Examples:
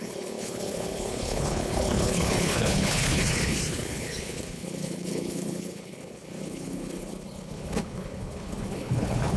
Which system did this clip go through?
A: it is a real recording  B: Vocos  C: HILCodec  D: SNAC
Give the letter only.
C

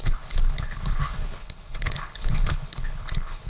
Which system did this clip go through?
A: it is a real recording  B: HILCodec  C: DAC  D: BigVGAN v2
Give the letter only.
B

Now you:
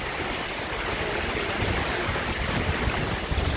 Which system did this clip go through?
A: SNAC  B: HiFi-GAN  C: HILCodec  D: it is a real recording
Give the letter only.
D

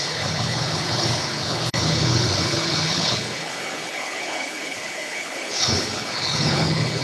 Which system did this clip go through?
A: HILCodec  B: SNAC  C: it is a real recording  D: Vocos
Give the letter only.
A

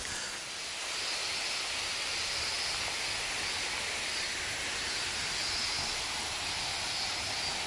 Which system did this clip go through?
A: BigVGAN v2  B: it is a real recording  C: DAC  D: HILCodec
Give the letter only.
B